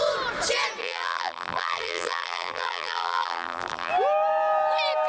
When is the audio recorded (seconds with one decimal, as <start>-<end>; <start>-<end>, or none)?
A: 0.0-0.8; 3.9-5.1